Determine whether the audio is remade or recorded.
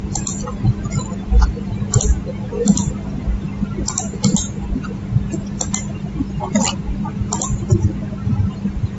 recorded